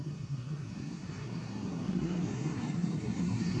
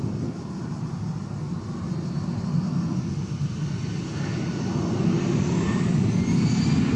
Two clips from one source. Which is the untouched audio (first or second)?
second